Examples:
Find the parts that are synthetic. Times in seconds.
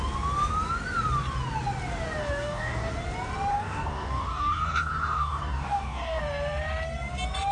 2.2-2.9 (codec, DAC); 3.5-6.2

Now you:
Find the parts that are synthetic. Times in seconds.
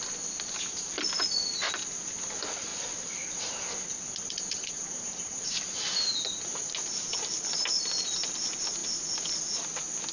2.7-7.4 (vocoder, BigVGAN v2)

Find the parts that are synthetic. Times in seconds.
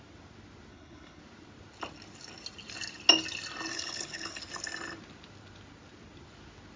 0.7-1.2 (codec, HILCodec); 3.7-4.4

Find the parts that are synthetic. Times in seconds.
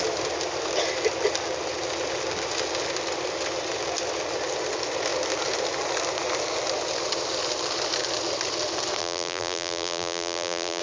9.0-10.8 (vocoder, BigVGAN v2)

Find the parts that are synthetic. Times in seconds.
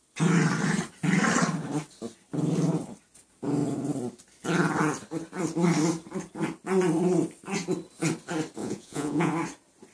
8.6-9.3 (vocoder, Vocos)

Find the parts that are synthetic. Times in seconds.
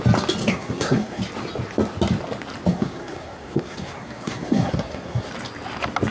0.4-1.2 (codec, SNAC); 2.7-5.3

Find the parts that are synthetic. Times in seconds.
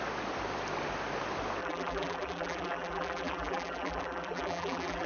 1.6-5.1 (vocoder, BigVGAN v2)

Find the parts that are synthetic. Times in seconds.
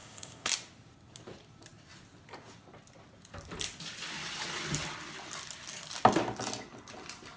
0.0-0.5 (codec, ZipCodec)